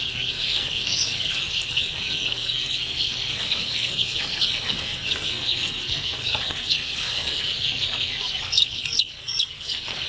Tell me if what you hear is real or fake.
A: fake